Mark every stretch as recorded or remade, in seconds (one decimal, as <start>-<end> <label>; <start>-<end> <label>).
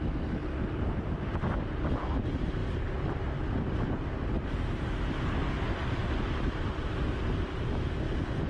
0.0-8.5 recorded